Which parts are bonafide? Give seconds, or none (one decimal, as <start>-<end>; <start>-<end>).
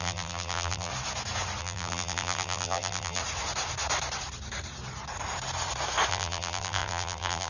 0.9-1.6; 3.2-6.1